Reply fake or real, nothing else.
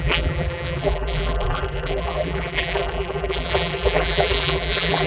fake